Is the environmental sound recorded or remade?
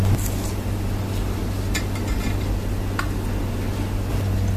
recorded